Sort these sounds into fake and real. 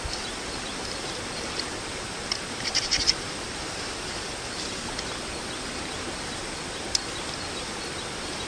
fake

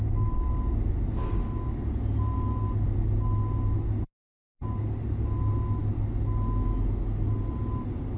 real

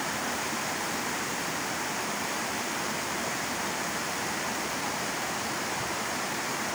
fake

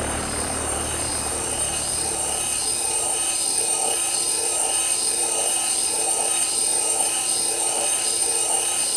fake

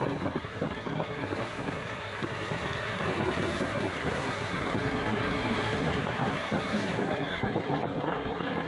fake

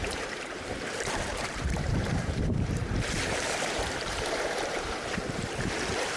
fake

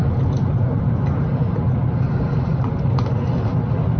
real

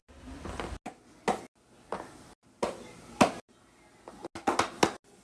real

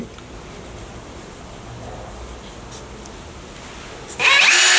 real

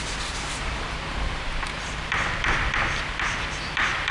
fake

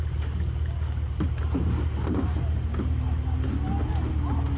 real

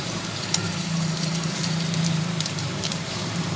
fake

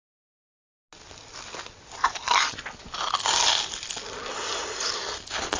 real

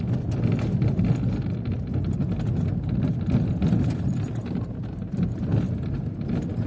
real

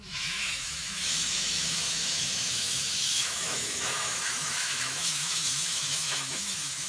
fake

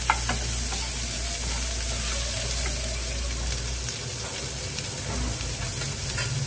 real